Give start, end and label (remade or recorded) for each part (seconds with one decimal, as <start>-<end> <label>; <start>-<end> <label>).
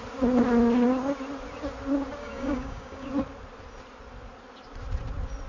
0.0-2.2 recorded; 2.2-3.1 remade; 3.1-5.5 recorded